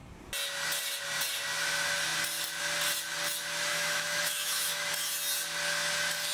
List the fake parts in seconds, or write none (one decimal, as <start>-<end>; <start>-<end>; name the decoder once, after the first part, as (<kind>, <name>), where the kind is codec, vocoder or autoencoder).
3.7-4.9 (autoencoder, DAC-VAE)